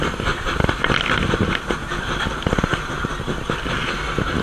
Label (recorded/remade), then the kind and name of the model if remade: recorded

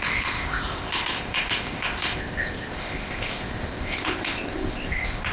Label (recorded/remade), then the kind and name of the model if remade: remade, codec, ZipCodec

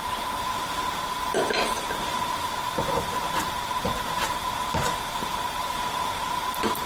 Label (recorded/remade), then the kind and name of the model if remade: remade, vocoder, BigVGAN v2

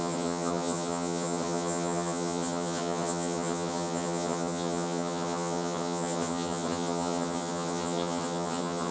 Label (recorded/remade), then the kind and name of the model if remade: remade, vocoder, HiFi-GAN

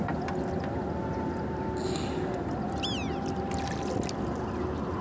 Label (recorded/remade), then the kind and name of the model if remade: recorded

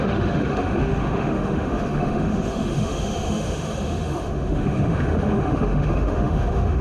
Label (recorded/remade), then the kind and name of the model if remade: remade, autoencoder, DAC-VAE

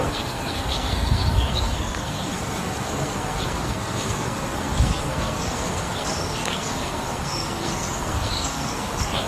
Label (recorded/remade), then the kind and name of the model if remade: remade, codec, SNAC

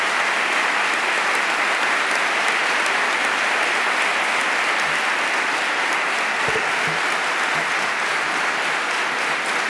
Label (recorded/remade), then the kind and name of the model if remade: recorded